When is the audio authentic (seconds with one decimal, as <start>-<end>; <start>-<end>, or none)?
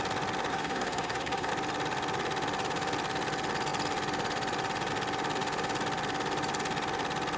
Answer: 0.0-0.5; 1.5-7.4